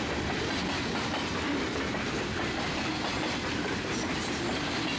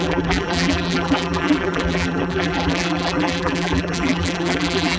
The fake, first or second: second